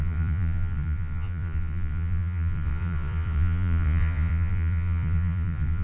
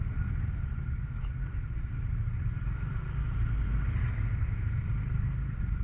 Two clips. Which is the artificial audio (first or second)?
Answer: first